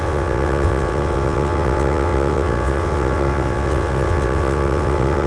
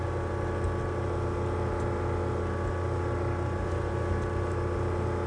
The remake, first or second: first